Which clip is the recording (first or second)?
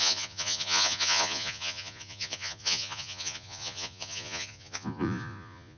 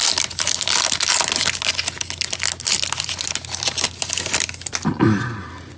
second